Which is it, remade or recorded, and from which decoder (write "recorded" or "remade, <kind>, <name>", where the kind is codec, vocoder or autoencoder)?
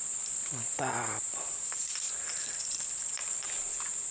remade, vocoder, BigVGAN v2